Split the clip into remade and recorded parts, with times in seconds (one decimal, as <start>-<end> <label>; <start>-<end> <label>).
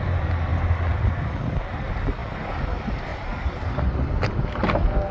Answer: 0.0-5.1 recorded